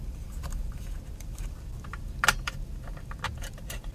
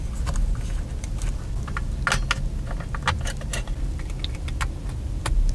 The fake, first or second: first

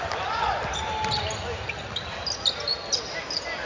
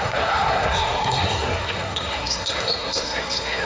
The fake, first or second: second